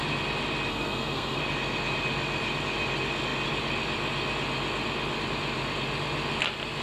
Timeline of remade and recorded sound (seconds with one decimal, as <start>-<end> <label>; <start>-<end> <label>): 0.0-0.7 recorded; 0.7-1.4 remade; 1.4-6.8 recorded